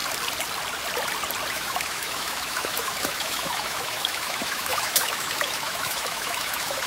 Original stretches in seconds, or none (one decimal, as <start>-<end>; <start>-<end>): 0.0-1.5